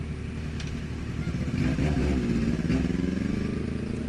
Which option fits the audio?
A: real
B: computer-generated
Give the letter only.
A